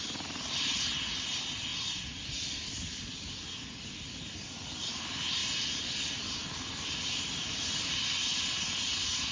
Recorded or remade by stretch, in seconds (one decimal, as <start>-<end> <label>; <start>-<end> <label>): 0.0-9.3 recorded